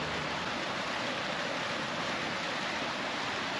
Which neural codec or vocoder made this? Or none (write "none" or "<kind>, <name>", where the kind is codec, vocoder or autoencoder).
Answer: none